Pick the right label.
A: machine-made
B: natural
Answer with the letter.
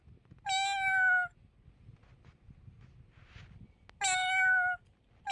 B